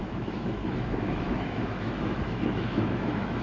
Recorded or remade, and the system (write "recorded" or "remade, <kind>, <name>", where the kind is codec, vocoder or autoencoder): remade, autoencoder, DAC-VAE